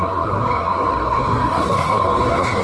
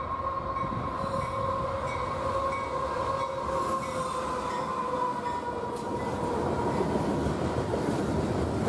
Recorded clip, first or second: second